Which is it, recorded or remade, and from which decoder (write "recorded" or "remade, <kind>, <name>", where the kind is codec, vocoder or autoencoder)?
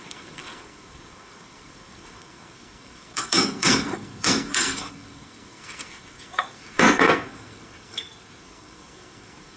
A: remade, codec, SNAC